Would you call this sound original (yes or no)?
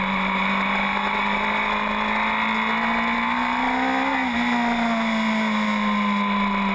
yes